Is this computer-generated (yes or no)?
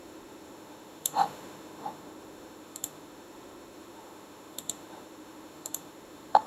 yes